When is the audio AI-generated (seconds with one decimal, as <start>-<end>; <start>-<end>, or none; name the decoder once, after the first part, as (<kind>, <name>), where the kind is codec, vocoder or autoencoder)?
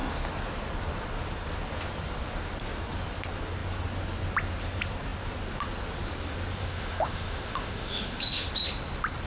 6.6-8.5 (autoencoder, DAC-VAE)